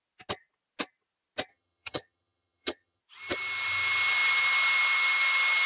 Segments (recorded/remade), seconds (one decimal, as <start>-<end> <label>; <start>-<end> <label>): 0.0-1.5 recorded; 1.5-3.0 remade; 3.0-5.7 recorded